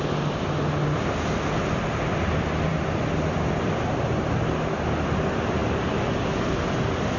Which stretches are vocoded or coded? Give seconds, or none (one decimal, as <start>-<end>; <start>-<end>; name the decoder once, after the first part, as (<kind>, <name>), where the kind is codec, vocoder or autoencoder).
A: none